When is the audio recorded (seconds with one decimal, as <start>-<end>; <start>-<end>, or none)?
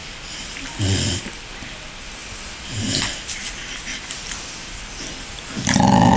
0.0-6.2